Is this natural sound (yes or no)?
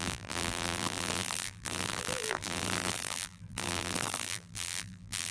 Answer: no